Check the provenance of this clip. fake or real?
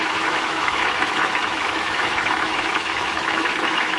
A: fake